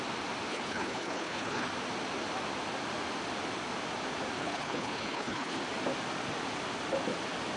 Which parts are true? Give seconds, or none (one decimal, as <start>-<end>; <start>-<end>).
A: 0.0-0.5; 1.7-4.4; 5.6-7.6